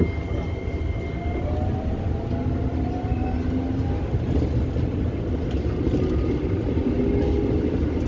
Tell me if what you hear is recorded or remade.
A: recorded